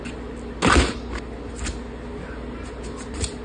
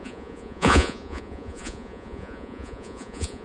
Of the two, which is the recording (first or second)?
first